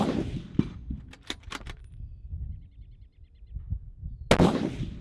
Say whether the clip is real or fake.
real